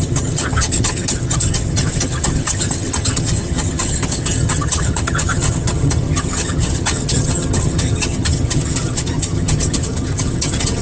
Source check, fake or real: fake